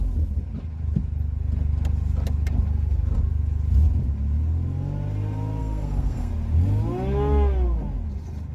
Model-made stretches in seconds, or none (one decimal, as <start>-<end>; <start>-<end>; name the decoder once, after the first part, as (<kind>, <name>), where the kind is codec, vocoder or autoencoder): 5.6-6.3 (codec, SNAC)